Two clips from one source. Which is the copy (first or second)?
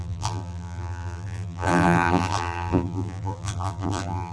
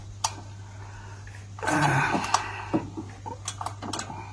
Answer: first